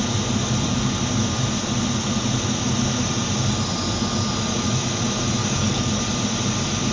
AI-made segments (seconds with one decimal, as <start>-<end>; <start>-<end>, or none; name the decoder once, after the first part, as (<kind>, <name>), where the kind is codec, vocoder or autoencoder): 5.4-6.0 (codec, DAC)